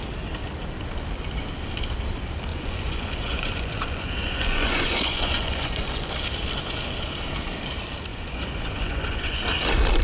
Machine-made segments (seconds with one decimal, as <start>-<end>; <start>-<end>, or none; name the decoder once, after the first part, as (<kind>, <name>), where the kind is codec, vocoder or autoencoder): 2.5-6.1 (vocoder, Vocos); 8.1-9.4